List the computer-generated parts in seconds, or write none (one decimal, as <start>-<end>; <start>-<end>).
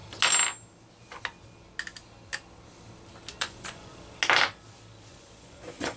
3.4-3.9; 5.1-6.0